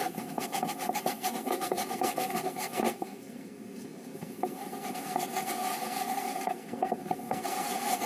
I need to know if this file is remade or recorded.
remade